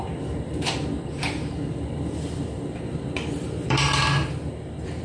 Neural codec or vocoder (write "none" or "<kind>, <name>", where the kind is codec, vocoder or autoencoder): vocoder, BigVGAN v2